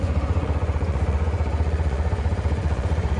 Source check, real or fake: fake